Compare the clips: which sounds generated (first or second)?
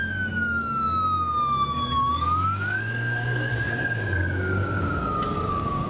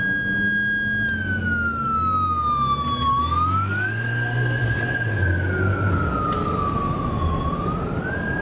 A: first